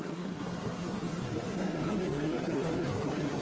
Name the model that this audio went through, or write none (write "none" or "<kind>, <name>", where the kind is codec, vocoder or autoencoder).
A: codec, SNAC